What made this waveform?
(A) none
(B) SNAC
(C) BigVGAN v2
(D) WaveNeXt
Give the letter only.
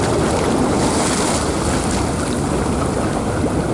A